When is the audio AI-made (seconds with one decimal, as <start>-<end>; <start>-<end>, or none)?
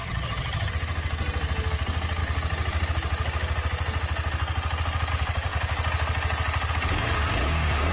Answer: 0.0-0.7